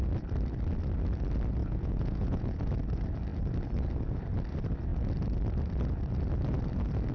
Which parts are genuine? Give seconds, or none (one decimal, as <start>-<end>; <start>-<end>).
0.0-1.6; 2.7-7.1